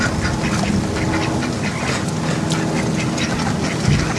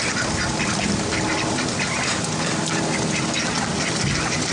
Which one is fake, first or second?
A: second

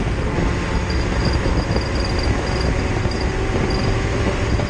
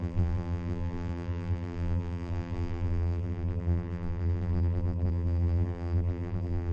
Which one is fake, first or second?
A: second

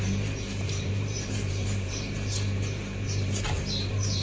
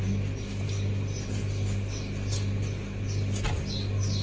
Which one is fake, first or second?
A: first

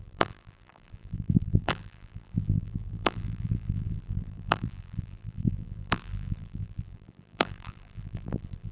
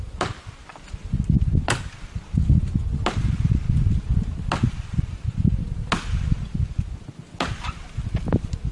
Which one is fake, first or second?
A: first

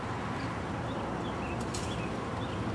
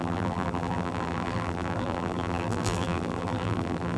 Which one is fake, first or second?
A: second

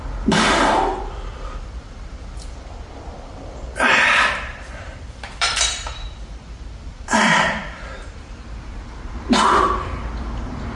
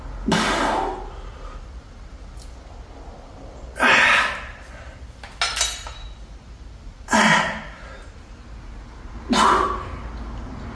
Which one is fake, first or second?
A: first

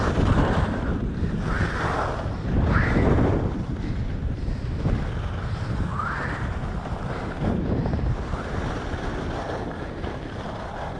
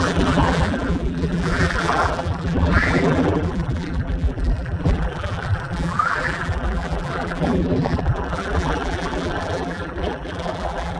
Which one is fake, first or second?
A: second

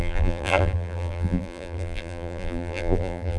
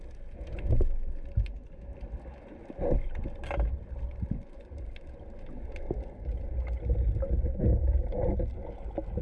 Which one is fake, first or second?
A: first